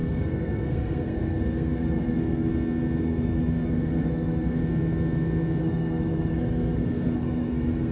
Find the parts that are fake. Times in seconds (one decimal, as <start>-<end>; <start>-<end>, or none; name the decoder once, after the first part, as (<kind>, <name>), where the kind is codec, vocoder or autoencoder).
0.0-2.5 (codec, SNAC); 3.0-4.6; 5.6-7.9